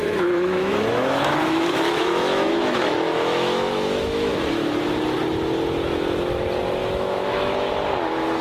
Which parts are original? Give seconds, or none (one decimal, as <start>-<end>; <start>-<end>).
4.3-6.8; 7.7-8.4